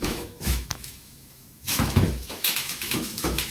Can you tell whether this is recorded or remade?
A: remade